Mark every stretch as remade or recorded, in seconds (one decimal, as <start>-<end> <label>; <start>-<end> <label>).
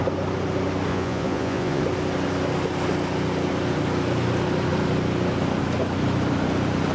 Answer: 0.0-0.9 recorded; 0.9-1.8 remade; 1.8-6.9 recorded